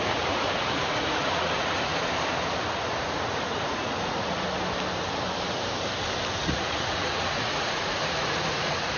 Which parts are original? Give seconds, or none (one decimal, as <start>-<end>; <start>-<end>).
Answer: 1.9-3.0; 4.5-6.4

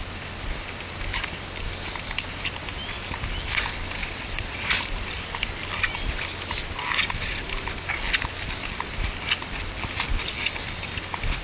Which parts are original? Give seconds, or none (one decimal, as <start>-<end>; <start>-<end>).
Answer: 0.0-4.0; 4.7-11.4

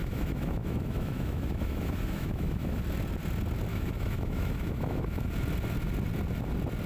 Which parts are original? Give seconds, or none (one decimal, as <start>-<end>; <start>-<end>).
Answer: 2.8-3.7; 5.3-6.9

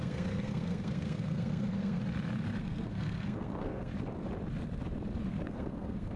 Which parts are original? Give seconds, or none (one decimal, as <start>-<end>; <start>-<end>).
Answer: 2.0-2.6; 3.9-5.3